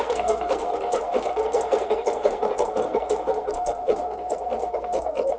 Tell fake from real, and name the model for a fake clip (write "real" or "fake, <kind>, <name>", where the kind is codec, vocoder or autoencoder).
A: fake, codec, SNAC